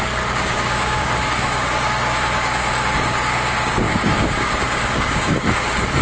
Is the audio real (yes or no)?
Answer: no